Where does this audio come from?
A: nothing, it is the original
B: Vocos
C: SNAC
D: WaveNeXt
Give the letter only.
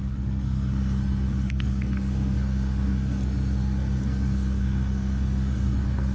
C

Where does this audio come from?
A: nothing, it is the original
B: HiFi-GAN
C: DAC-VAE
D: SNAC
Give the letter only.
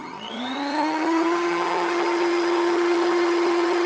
B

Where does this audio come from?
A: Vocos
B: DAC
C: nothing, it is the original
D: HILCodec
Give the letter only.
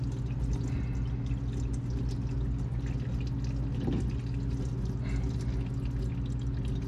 C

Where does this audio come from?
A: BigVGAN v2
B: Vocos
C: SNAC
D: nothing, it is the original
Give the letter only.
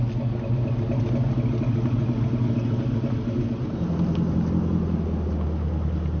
D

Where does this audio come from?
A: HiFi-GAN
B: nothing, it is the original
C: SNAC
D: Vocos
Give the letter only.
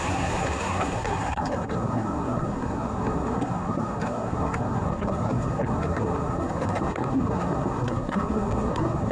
C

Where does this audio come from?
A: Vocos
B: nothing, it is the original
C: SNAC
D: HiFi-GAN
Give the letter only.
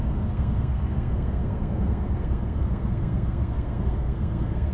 C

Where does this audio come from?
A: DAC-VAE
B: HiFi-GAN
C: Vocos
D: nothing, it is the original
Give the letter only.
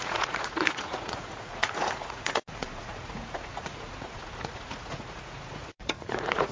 C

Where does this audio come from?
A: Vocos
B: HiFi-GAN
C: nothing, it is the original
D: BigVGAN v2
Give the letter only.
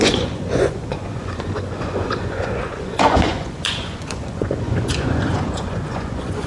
A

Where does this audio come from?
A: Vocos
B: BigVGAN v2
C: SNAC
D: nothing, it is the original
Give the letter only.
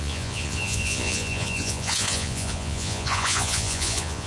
A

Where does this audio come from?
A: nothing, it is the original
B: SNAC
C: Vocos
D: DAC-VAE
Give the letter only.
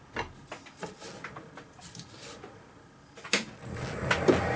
A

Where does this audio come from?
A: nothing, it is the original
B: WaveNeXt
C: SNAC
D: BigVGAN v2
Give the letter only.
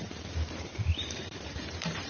D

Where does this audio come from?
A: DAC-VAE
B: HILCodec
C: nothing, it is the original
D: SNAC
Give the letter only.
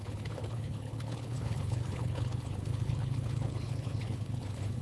B